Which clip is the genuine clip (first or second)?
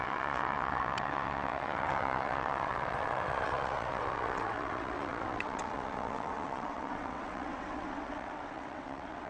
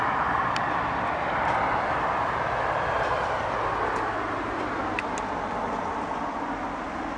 second